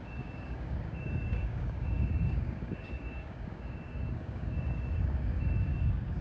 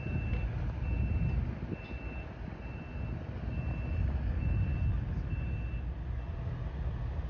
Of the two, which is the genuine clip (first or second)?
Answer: second